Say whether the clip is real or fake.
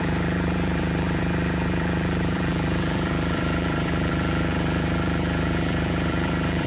fake